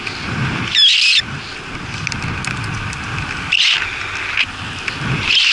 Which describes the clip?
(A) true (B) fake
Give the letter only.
A